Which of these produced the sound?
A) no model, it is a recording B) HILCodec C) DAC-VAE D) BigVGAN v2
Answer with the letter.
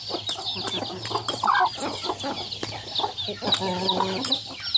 A